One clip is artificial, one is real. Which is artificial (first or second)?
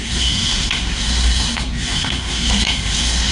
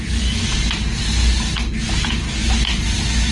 first